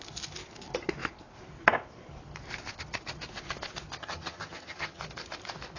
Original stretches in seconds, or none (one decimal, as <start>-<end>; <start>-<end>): 0.0-4.0; 5.0-5.8